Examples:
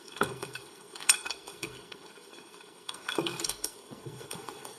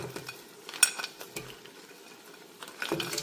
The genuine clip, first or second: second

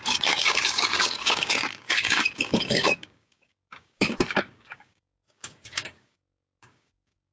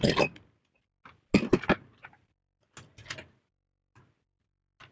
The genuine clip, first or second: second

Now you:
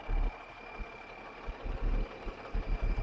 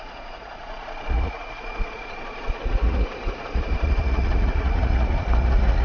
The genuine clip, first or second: first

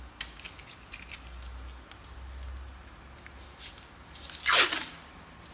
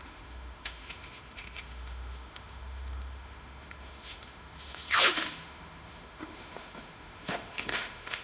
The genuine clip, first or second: first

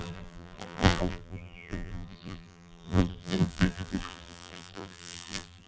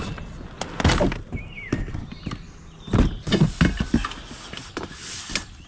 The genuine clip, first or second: second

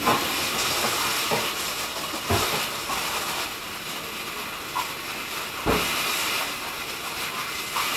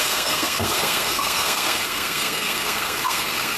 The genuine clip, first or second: first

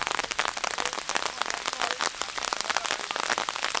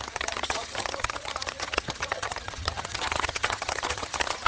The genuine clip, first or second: first